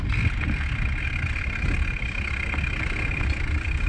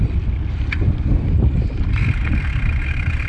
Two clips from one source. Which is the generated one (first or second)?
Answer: second